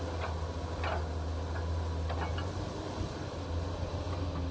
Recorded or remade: recorded